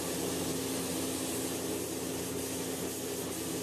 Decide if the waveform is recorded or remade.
recorded